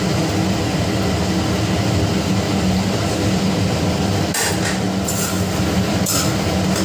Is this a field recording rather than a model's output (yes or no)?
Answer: yes